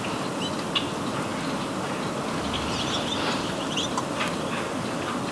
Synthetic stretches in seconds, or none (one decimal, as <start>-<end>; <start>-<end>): none